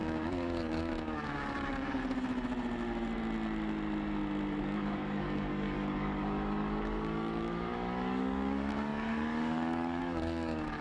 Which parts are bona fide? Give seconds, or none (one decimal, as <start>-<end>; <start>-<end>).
2.0-4.6